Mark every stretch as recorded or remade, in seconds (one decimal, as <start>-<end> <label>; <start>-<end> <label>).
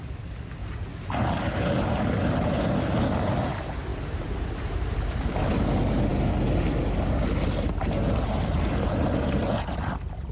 0.0-0.6 recorded; 0.6-1.3 remade; 1.3-3.9 recorded; 3.9-5.5 remade; 5.5-10.3 recorded